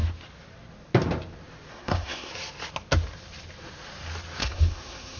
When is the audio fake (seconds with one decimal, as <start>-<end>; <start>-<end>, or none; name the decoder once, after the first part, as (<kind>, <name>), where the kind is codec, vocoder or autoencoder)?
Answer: 1.7-2.3 (codec, SNAC); 4.4-5.2